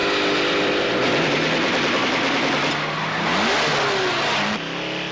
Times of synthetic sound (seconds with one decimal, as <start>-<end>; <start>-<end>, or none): none